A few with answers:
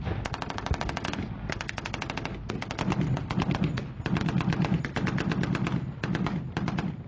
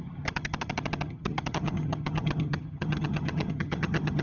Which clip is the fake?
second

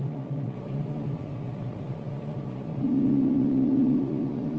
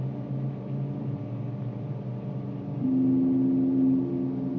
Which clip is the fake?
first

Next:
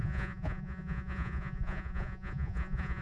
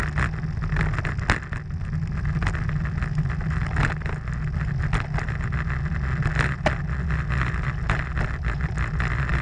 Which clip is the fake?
first